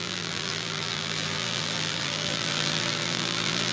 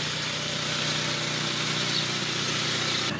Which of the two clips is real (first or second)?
second